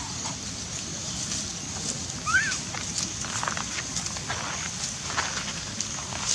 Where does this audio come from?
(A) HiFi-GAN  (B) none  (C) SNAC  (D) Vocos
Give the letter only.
B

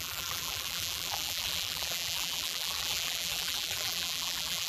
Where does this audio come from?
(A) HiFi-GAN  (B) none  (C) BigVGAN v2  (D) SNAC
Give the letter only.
C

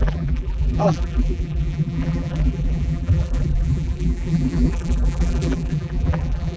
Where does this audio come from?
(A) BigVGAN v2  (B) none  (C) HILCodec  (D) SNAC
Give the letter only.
A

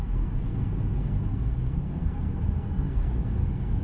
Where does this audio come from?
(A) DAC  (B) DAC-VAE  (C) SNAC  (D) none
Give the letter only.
C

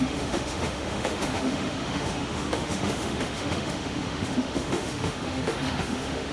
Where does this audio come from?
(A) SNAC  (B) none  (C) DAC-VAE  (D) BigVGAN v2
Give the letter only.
C